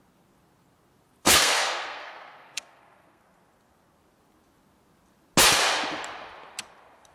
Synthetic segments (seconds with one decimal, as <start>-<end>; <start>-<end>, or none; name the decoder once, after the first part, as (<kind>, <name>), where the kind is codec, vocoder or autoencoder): 1.2-3.2 (codec, SNAC)